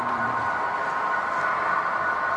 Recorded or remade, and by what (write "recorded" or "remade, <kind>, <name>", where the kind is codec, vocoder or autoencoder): recorded